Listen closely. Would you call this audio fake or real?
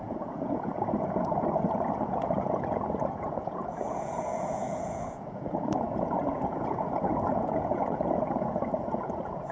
fake